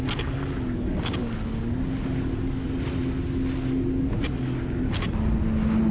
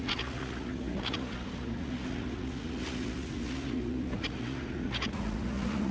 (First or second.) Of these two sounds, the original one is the first